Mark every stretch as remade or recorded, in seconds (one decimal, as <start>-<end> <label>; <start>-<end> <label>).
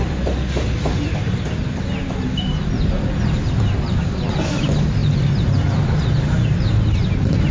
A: 0.0-7.5 recorded